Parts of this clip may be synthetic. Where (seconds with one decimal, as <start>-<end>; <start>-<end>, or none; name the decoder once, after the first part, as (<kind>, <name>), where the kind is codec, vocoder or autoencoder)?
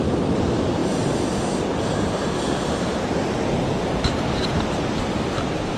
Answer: none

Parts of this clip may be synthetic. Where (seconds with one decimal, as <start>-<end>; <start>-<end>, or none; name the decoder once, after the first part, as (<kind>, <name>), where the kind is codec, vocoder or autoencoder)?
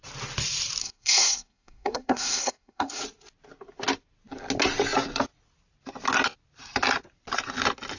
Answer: 0.8-3.0 (codec, SNAC)